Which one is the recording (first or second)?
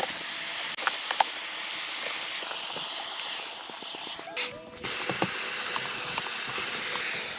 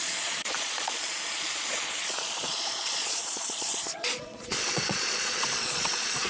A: first